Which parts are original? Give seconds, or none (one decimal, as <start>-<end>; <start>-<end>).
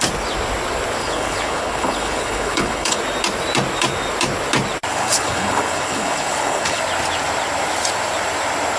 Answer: 0.0-1.0; 3.0-4.9; 6.8-8.8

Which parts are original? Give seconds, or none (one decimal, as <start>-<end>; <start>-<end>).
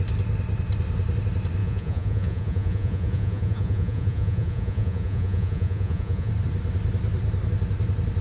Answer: 0.0-1.6; 6.3-8.2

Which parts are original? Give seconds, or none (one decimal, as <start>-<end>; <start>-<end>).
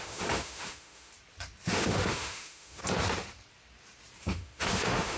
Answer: 1.1-1.7; 2.8-4.2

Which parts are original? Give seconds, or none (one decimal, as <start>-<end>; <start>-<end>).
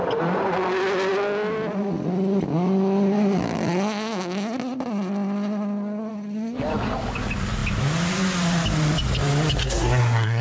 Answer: 0.0-9.6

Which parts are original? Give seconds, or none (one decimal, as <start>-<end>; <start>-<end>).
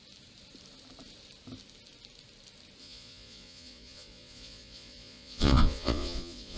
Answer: 0.0-2.8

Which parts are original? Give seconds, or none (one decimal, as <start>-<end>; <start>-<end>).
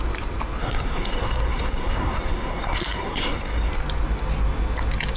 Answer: 0.0-0.6; 3.7-5.2